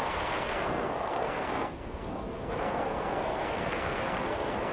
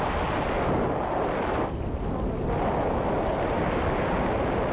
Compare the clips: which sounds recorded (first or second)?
second